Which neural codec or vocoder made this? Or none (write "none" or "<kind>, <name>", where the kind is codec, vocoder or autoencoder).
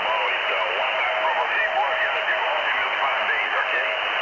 none